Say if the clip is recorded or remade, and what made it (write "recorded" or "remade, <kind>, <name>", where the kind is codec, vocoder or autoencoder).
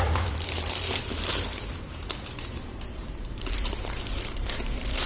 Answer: remade, vocoder, BigVGAN v2